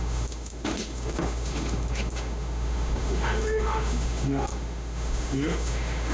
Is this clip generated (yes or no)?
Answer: yes